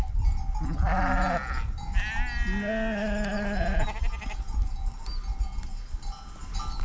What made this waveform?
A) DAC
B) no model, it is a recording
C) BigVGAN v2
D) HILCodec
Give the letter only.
B